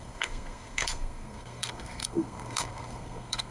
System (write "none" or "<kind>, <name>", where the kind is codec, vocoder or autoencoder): codec, SNAC